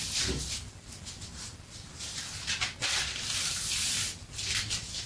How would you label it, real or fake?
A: real